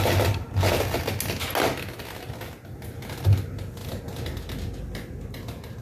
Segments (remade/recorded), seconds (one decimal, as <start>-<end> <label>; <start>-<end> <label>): 0.0-5.8 recorded